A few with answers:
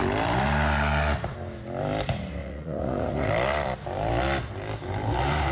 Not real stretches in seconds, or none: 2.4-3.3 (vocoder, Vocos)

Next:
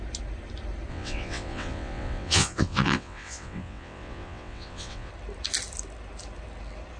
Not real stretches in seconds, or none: 0.9-5.1 (vocoder, WaveNeXt)

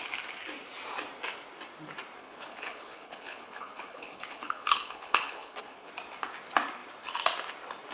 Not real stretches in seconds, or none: 2.2-5.9 (codec, HILCodec)

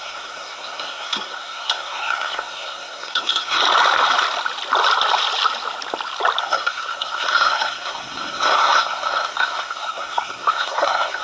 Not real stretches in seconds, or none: 0.0-3.6 (codec, SNAC); 6.4-11.2

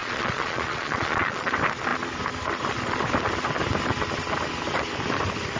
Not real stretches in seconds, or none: 0.0-1.5 (vocoder, Vocos)

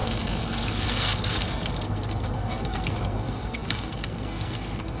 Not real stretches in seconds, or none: 0.0-5.0 (codec, SNAC)